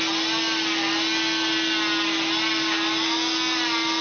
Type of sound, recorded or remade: recorded